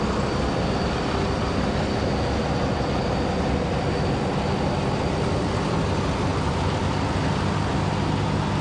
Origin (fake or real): real